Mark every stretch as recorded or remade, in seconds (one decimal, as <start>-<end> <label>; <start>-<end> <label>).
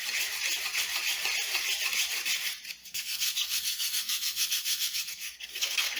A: 0.0-2.8 recorded; 2.8-6.0 remade